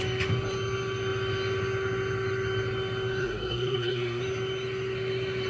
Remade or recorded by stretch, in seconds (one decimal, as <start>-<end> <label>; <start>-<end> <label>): 0.0-3.2 recorded; 3.2-4.2 remade; 4.2-5.5 recorded